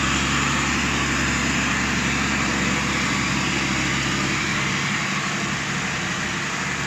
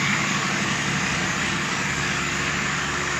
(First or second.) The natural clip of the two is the first